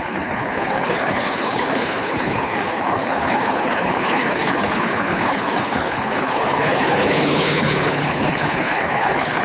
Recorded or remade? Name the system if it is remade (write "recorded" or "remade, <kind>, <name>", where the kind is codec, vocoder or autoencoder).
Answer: remade, codec, HILCodec